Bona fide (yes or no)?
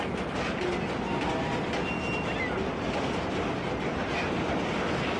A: yes